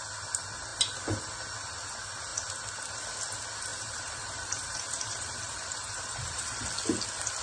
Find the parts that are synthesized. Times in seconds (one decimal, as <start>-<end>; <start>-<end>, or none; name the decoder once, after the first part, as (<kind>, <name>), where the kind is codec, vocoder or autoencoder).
3.7-6.6 (vocoder, BigVGAN v2)